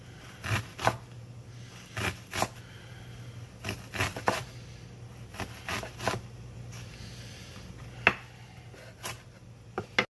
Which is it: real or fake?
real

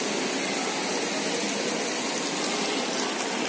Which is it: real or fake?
real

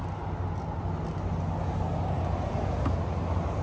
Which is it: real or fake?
real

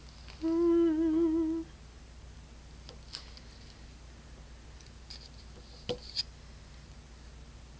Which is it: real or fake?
real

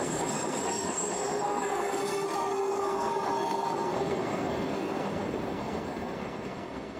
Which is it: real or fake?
fake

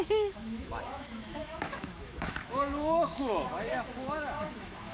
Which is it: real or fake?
fake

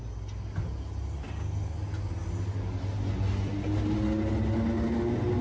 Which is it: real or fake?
real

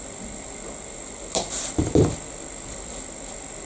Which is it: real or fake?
real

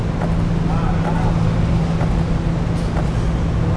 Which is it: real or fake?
real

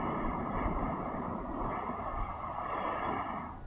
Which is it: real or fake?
fake